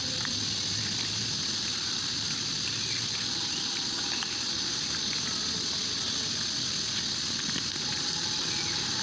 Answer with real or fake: real